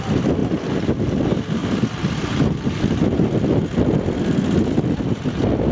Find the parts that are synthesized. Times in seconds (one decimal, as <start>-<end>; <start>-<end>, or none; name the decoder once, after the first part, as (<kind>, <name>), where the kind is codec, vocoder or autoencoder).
none